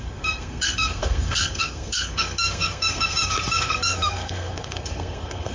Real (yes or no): no